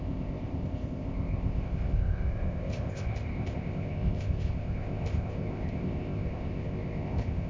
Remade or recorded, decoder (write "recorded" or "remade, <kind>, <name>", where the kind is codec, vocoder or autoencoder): remade, codec, ZipCodec